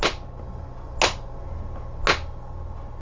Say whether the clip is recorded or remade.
recorded